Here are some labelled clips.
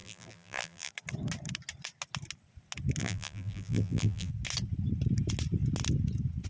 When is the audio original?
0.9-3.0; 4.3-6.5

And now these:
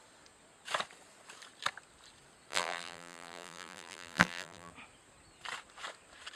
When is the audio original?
0.0-2.5; 4.7-6.4

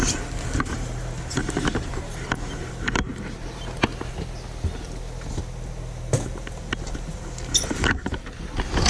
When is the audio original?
0.0-1.4; 2.7-8.9

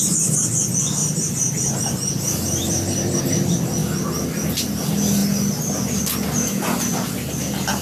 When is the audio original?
0.0-1.0; 3.2-7.8

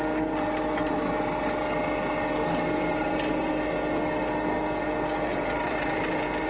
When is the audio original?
0.0-2.9; 3.5-5.3

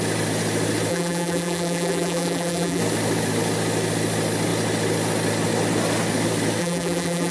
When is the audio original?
0.0-0.9; 2.8-6.6